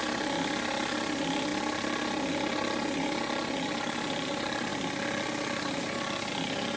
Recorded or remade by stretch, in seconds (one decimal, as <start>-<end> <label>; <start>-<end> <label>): 0.0-6.8 recorded